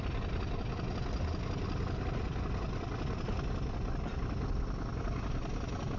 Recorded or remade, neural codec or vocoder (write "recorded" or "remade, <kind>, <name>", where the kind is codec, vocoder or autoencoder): recorded